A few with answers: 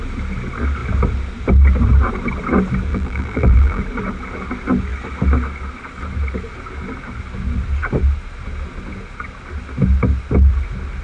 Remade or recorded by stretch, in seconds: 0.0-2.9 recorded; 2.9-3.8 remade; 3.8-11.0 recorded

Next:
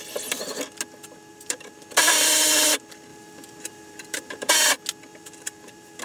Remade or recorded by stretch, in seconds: 0.0-1.3 recorded; 1.3-1.8 remade; 1.8-3.1 recorded; 3.1-4.5 remade; 4.5-5.1 recorded; 5.1-6.0 remade

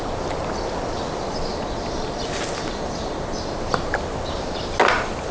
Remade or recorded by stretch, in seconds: 0.0-1.5 recorded; 1.5-3.4 remade; 3.4-5.3 recorded

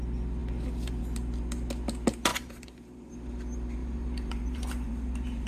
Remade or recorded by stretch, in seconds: 0.0-2.3 recorded; 2.3-3.1 remade; 3.1-3.8 recorded; 3.8-5.5 remade

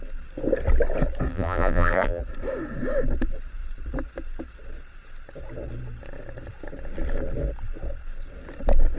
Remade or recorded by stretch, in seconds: 0.0-1.3 recorded; 1.3-2.2 remade; 2.2-9.0 recorded

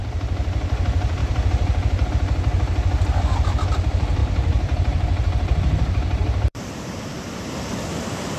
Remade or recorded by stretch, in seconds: 0.0-1.2 recorded; 1.2-2.1 remade; 2.1-4.2 recorded; 4.2-7.7 remade; 7.7-8.4 recorded

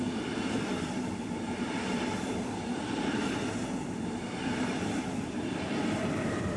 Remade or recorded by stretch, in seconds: 0.0-6.6 remade

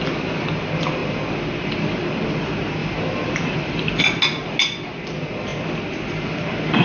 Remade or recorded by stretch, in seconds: 0.0-2.8 recorded; 2.8-4.0 remade; 4.0-6.8 recorded